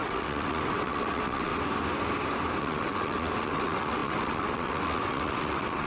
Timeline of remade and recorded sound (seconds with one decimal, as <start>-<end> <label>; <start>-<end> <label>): 0.0-1.5 remade; 1.5-2.6 recorded; 2.6-5.9 remade